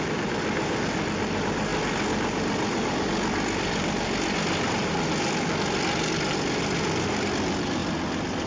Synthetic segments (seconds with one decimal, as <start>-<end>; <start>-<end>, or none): none